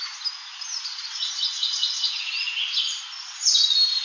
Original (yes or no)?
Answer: yes